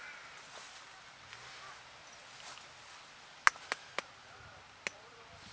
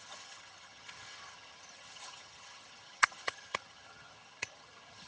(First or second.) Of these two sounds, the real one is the first